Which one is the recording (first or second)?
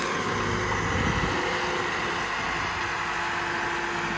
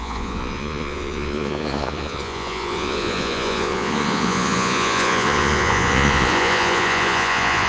first